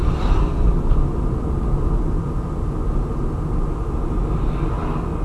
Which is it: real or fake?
real